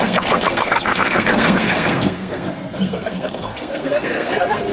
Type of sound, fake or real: fake